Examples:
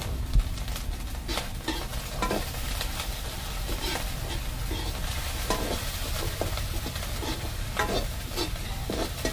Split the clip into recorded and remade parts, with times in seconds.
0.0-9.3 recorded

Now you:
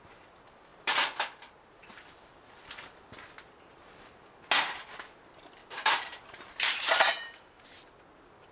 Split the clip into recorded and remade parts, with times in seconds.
0.0-0.7 recorded; 0.7-1.9 remade; 1.9-5.6 recorded; 5.6-7.6 remade; 7.6-8.5 recorded

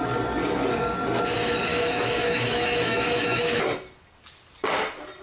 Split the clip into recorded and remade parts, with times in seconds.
0.0-1.7 recorded; 1.7-3.6 remade; 3.6-5.2 recorded

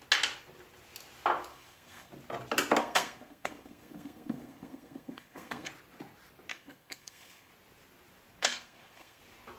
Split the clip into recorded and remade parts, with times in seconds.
0.0-1.5 recorded; 1.5-2.1 remade; 2.1-2.8 recorded; 2.8-5.7 remade; 5.7-6.5 recorded; 6.5-7.5 remade; 7.5-8.4 recorded; 8.4-9.2 remade; 9.2-9.6 recorded

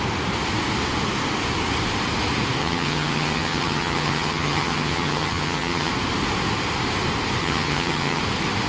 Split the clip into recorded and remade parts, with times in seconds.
0.0-2.6 recorded; 2.6-5.9 remade; 5.9-7.4 recorded; 7.4-8.2 remade; 8.2-8.7 recorded

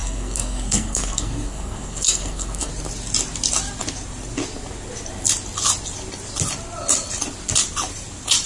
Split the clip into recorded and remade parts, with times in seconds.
0.0-2.7 remade; 2.7-8.5 recorded

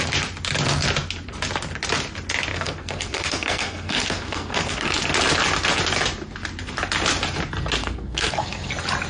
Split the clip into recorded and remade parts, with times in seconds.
0.0-2.5 recorded; 2.5-5.0 remade; 5.0-7.8 recorded; 7.8-8.7 remade; 8.7-9.1 recorded

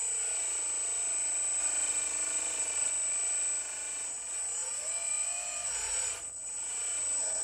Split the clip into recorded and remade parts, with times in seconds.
0.0-1.6 recorded; 1.6-2.9 remade; 2.9-4.6 recorded; 4.6-6.3 remade; 6.3-7.4 recorded